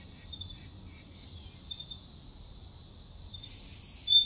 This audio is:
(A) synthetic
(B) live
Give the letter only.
B